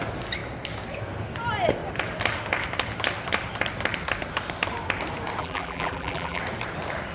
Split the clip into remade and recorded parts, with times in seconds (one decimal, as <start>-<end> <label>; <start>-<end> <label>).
0.0-5.4 recorded; 5.4-6.4 remade; 6.4-7.1 recorded